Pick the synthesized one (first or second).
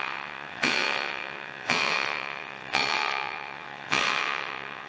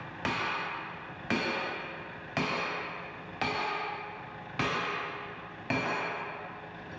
first